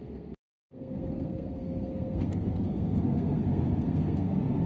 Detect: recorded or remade remade